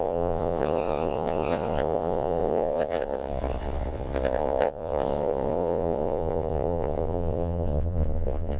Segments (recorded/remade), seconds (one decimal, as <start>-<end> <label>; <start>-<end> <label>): 0.0-8.6 remade